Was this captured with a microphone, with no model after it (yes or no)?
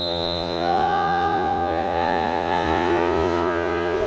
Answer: no